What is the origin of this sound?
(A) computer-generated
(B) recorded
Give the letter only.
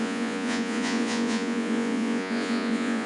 A